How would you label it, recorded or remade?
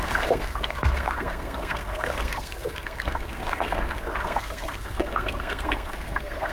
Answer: remade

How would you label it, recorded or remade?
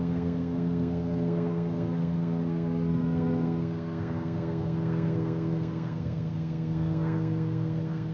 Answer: remade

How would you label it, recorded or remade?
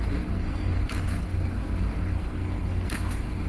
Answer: remade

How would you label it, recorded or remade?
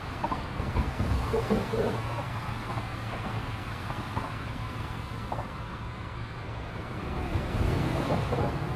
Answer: remade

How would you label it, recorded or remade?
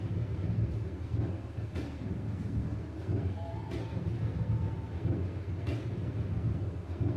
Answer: remade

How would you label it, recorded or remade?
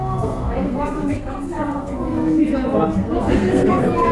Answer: remade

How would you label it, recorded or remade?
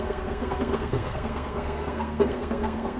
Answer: remade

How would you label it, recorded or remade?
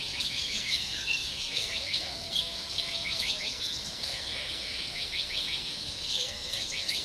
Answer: remade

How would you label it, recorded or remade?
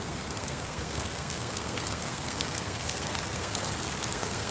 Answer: remade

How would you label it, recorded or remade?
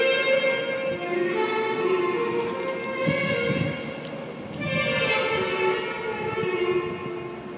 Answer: recorded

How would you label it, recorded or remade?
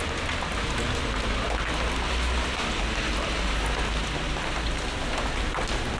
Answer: recorded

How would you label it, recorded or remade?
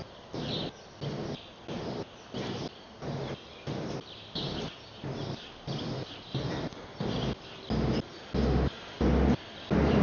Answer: recorded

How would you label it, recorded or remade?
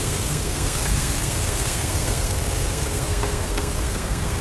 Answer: remade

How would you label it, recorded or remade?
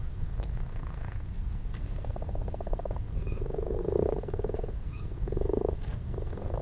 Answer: remade